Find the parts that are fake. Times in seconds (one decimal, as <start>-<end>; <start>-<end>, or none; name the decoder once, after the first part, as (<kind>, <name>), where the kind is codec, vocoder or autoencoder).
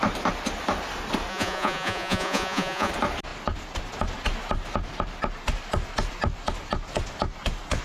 1.3-2.9 (vocoder, Vocos)